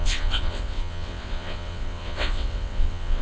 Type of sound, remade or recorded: remade